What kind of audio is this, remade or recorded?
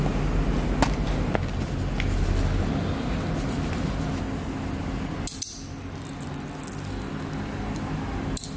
recorded